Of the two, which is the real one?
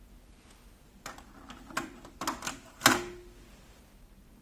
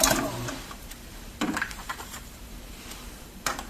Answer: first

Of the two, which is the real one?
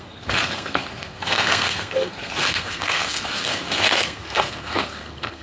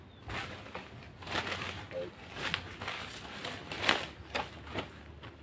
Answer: second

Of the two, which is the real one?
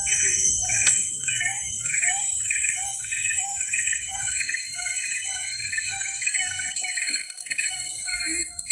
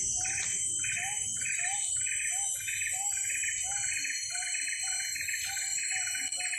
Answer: second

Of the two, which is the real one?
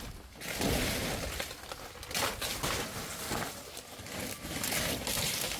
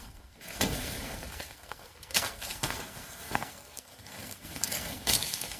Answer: first